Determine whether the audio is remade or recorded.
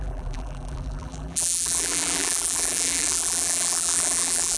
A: remade